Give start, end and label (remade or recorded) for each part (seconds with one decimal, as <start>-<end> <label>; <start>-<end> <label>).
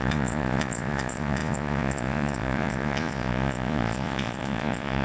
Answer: 0.0-5.0 remade